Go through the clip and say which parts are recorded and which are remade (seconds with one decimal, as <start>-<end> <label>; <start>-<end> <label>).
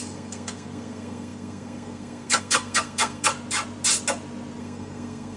0.0-3.3 remade; 3.3-4.6 recorded; 4.6-5.4 remade